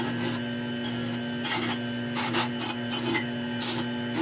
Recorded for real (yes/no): yes